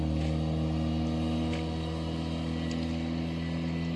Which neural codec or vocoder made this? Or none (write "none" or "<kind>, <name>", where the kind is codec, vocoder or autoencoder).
none